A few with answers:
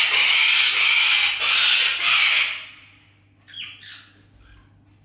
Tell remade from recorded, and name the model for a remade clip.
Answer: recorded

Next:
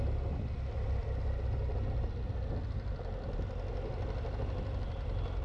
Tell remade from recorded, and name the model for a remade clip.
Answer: recorded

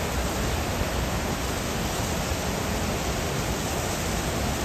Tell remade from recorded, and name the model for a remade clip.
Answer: recorded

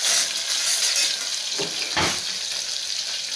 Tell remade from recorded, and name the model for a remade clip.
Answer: recorded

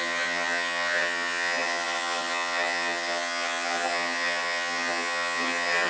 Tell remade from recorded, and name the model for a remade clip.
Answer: remade, vocoder, HiFi-GAN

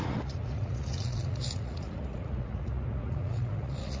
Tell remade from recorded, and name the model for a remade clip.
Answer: remade, vocoder, Vocos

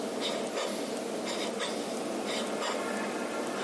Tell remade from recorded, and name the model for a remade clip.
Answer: recorded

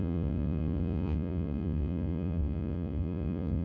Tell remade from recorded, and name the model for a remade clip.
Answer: remade, vocoder, Vocos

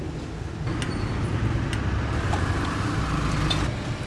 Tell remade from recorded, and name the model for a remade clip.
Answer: recorded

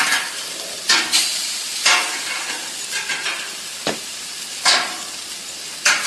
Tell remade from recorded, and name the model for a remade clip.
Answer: recorded